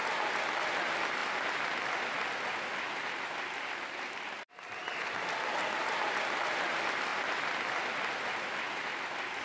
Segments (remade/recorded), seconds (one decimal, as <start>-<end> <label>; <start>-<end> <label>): 0.0-9.4 recorded